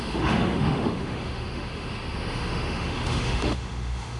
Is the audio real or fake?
fake